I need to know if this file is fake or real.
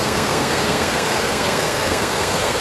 fake